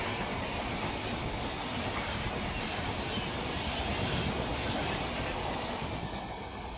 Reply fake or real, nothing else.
real